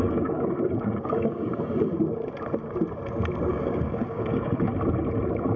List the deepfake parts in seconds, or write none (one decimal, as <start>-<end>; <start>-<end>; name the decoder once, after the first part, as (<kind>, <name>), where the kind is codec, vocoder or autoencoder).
0.0-1.5 (codec, DAC); 3.5-4.7

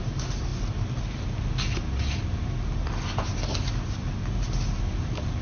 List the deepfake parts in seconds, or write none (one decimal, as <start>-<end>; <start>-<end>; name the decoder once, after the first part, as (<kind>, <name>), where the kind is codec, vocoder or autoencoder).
none

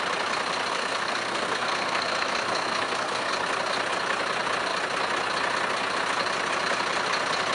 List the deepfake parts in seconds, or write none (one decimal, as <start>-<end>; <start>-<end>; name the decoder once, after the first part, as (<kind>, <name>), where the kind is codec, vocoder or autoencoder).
0.7-3.3 (codec, SNAC)

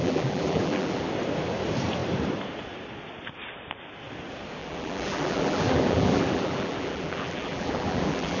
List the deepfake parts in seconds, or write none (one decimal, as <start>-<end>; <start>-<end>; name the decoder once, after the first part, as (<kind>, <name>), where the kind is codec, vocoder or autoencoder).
0.0-1.0 (vocoder, BigVGAN v2); 4.6-8.4

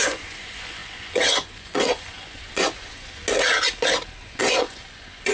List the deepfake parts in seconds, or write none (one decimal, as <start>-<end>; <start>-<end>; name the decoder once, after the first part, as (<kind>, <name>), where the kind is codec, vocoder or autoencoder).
0.0-3.2 (vocoder, Vocos); 4.2-5.3

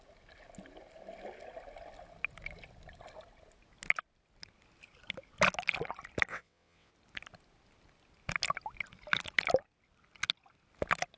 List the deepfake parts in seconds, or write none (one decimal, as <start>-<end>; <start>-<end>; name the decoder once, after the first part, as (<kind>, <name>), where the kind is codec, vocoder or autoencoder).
6.3-6.9 (vocoder, WaveNeXt)